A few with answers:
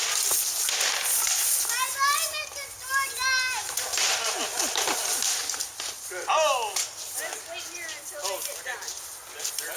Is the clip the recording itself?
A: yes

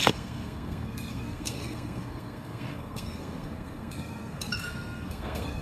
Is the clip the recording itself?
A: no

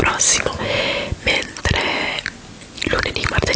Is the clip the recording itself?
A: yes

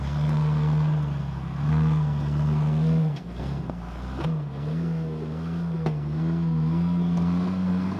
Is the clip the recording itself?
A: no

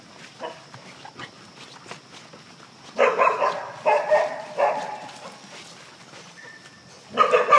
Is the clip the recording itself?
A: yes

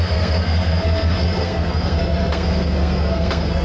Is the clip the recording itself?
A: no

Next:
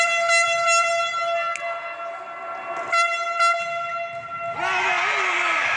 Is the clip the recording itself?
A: yes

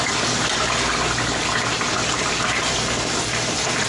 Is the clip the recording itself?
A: yes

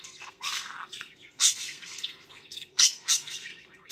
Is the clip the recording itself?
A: no